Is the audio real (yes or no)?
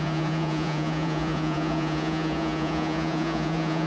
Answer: no